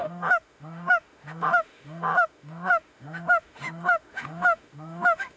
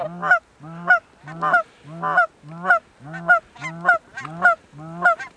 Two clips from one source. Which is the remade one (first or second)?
first